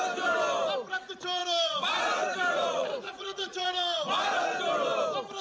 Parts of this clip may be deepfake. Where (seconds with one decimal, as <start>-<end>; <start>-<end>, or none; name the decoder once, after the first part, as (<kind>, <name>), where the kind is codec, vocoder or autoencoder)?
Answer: 1.4-4.6 (vocoder, Vocos)